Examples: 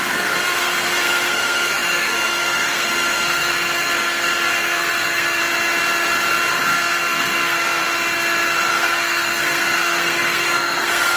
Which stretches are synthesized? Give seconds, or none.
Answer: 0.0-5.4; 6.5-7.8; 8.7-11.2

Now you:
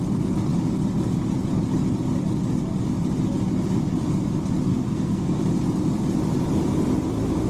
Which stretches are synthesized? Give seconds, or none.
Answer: 4.7-5.4

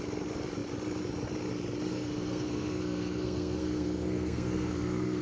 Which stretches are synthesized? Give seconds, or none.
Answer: 1.9-5.2